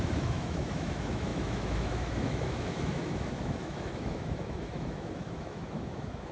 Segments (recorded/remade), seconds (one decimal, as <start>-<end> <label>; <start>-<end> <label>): 0.0-6.3 remade